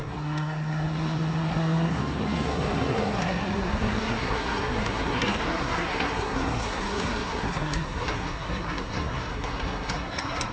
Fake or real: fake